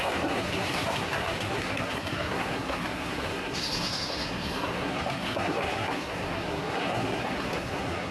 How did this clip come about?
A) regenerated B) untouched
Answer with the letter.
A